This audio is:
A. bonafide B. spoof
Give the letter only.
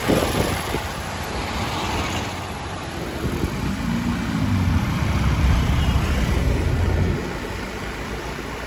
A